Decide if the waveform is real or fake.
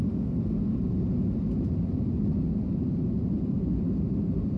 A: real